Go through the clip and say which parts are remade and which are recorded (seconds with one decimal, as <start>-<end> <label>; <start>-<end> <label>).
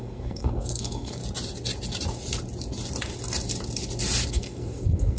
0.0-1.2 remade; 1.2-4.3 recorded; 4.3-5.2 remade